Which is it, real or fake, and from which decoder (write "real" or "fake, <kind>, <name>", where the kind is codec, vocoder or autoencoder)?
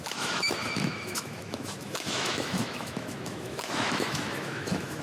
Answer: fake, autoencoder, DAC-VAE